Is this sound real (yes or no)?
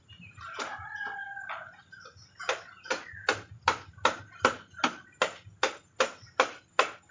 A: yes